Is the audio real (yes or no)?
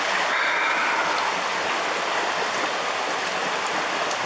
yes